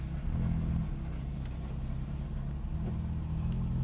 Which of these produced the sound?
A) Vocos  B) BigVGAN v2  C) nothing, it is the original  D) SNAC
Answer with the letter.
C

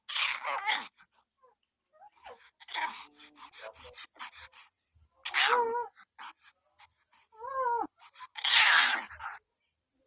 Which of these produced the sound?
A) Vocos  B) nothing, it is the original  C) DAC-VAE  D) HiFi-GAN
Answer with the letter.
B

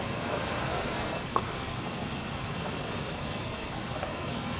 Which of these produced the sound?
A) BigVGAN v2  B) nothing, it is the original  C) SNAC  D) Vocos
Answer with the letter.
C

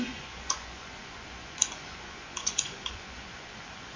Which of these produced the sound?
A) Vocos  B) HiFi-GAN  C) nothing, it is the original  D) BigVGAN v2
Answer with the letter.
A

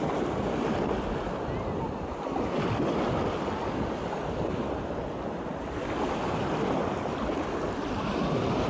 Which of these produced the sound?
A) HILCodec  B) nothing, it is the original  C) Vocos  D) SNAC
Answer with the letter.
B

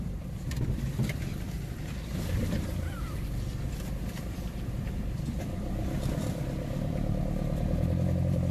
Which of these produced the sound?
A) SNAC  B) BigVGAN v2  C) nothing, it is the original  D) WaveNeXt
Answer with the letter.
B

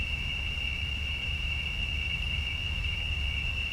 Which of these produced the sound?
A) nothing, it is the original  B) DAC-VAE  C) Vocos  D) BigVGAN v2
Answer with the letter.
B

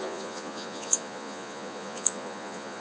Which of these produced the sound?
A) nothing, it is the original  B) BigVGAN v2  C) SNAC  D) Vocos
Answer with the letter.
D